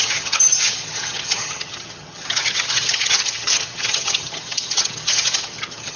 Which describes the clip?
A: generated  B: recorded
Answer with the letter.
A